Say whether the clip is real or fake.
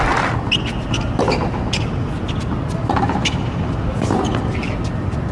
real